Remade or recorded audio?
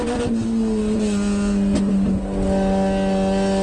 recorded